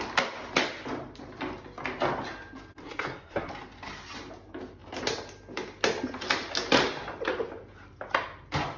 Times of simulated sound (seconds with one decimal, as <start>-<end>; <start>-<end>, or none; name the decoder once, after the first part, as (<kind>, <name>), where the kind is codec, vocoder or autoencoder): 2.8-3.5 (codec, SNAC)